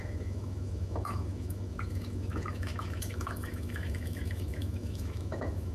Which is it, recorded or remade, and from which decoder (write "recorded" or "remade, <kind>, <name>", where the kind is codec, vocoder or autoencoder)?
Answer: remade, autoencoder, DAC-VAE